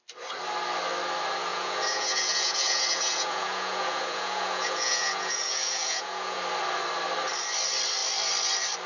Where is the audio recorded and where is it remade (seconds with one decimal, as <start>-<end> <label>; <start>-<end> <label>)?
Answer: 0.0-1.5 recorded; 1.5-6.4 remade; 6.4-8.9 recorded